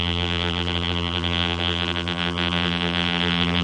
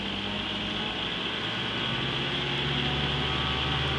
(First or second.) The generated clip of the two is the first